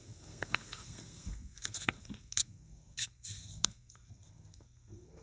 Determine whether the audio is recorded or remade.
remade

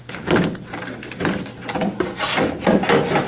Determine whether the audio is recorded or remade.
recorded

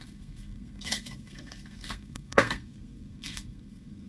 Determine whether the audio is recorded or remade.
remade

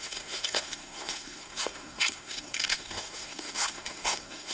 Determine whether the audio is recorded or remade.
remade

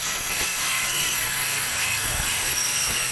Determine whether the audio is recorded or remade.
remade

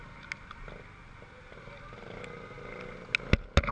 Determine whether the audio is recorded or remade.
recorded